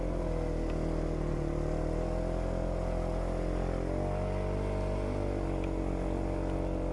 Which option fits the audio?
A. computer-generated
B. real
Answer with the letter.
B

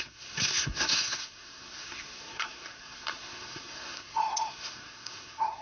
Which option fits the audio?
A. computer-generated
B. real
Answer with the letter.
A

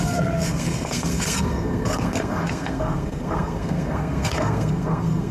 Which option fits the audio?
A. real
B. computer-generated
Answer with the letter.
B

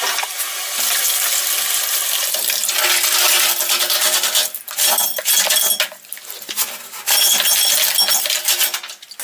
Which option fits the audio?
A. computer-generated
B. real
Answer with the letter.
B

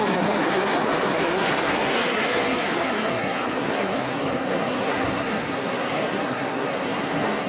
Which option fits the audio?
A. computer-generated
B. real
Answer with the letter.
A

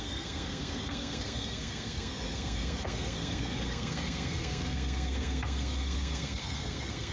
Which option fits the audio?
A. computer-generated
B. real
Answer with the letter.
A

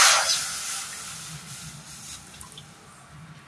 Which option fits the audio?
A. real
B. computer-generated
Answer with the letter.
A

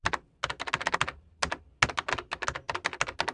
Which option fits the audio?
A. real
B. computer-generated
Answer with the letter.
A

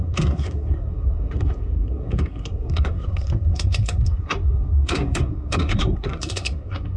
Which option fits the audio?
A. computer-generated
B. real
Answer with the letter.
A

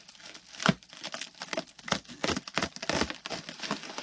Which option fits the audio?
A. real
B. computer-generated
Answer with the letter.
A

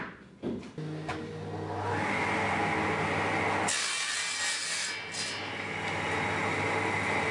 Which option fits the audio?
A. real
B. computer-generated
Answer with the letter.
A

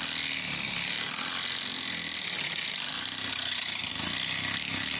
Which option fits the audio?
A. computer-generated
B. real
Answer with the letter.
B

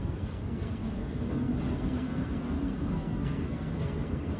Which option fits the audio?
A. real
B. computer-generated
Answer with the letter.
B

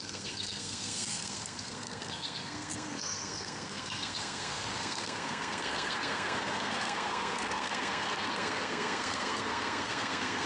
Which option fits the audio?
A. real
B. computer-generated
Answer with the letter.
B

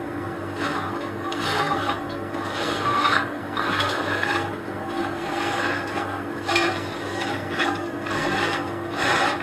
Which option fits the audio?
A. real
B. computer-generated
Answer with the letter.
B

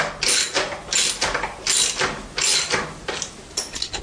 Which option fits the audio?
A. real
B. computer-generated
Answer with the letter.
A